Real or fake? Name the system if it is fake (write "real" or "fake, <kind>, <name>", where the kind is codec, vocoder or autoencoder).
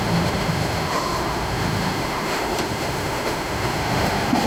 fake, autoencoder, DAC-VAE